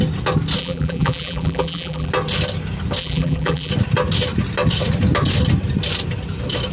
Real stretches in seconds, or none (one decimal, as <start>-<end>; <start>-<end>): 0.0-0.6; 2.1-3.0; 3.7-6.7